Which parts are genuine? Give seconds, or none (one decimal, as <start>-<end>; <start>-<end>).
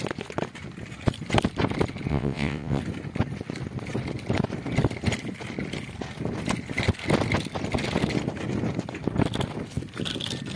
0.0-2.1; 2.8-10.6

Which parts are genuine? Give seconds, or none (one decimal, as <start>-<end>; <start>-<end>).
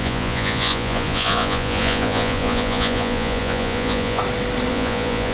4.2-4.7